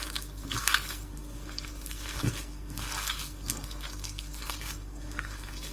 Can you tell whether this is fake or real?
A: fake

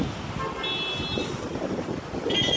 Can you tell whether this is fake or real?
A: real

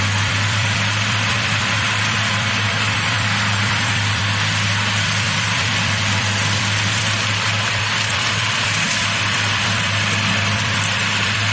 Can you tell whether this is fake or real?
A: fake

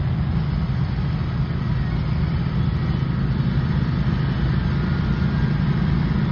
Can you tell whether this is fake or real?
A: real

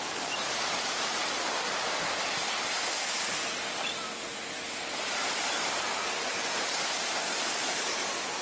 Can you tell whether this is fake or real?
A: real